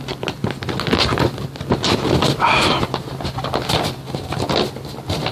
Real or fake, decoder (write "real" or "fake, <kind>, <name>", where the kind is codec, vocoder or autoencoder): real